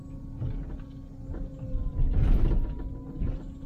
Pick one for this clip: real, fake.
real